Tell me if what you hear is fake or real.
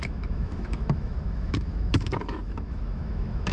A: fake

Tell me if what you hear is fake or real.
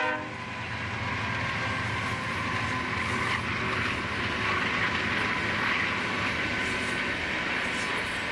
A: real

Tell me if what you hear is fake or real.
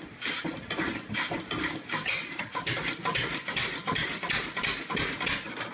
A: real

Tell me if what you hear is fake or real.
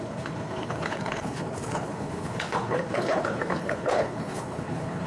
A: fake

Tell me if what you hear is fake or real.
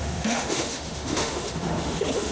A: fake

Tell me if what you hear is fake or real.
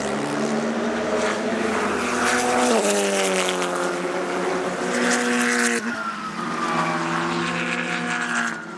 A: real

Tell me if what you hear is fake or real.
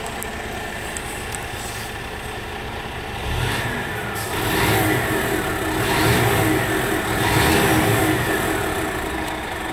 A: real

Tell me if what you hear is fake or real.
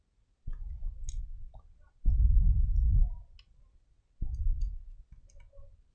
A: real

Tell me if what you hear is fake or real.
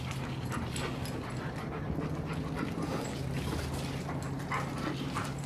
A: real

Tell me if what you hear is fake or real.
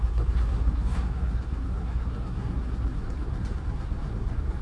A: fake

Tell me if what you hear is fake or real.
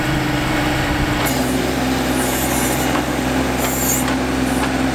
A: fake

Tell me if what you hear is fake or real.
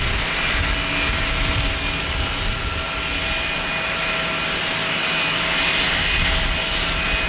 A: real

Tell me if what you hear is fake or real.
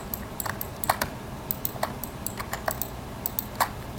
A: real